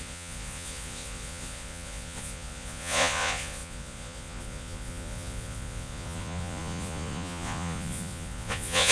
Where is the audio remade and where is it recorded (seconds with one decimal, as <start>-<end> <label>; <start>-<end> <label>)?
0.0-8.9 remade